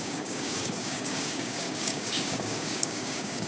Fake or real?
fake